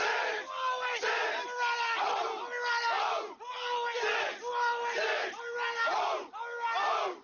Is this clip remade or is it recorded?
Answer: recorded